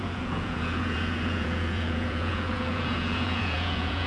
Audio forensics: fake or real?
fake